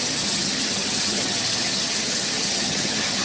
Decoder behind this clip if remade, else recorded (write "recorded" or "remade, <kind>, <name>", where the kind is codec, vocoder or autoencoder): remade, vocoder, HiFi-GAN